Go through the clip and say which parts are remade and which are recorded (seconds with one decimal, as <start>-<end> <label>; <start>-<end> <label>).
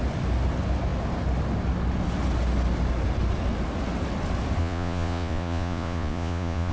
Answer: 0.0-4.6 recorded; 4.6-6.7 remade